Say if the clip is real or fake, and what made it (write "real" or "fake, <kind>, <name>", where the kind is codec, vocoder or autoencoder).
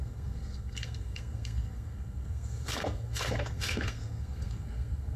fake, codec, SNAC